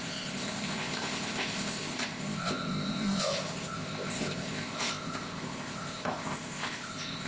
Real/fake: fake